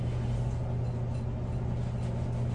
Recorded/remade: recorded